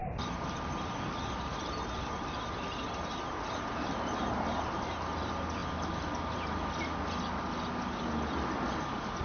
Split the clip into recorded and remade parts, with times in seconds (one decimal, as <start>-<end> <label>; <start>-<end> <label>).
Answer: 0.0-5.0 remade; 5.0-9.2 recorded